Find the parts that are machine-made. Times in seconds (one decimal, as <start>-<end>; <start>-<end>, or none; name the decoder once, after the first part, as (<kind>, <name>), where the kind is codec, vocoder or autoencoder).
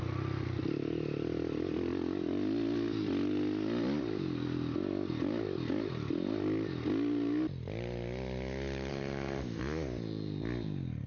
8.9-9.6 (autoencoder, DAC-VAE)